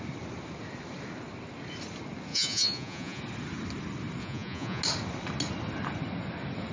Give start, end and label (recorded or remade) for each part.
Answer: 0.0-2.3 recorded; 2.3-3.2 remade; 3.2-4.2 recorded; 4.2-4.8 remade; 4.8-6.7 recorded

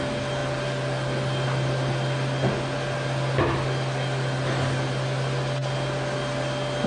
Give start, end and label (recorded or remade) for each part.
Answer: 0.0-6.9 recorded